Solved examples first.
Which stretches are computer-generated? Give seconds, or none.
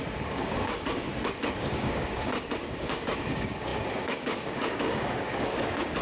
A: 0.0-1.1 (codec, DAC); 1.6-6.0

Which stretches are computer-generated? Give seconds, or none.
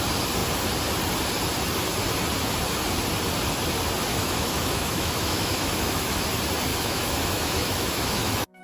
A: 4.1-6.2 (autoencoder, DAC-VAE); 6.7-8.6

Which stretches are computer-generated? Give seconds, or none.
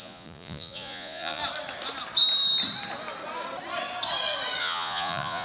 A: 0.0-1.4 (vocoder, Vocos); 4.6-5.4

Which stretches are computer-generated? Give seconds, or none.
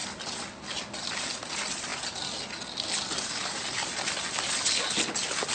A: none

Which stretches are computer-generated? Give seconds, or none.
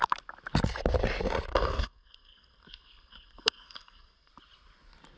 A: 1.5-4.3 (codec, SNAC)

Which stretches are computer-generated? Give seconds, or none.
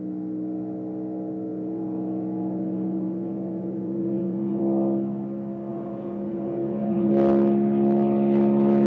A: 1.5-4.6 (vocoder, Vocos); 5.7-7.1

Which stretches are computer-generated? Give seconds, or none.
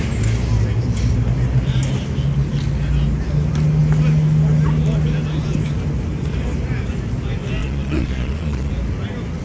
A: 7.6-8.7 (vocoder, Vocos)